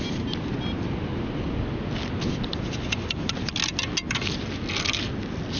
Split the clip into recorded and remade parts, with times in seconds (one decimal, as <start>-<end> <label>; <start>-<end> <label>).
0.0-5.6 recorded